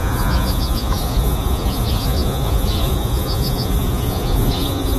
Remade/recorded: remade